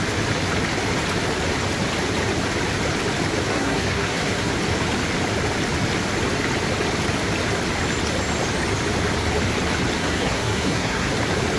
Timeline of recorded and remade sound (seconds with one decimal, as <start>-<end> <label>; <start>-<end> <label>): 0.0-3.5 recorded; 3.5-4.5 remade; 4.5-10.0 recorded; 10.0-11.1 remade; 11.1-11.6 recorded